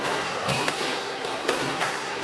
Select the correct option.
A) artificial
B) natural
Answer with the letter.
A